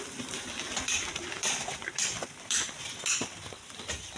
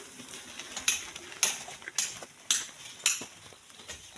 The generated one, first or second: first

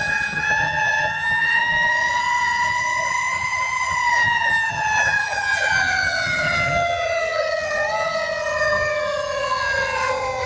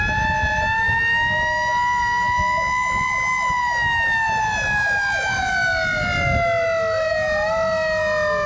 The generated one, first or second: first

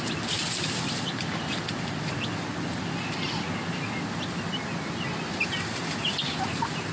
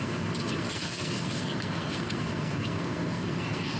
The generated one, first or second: second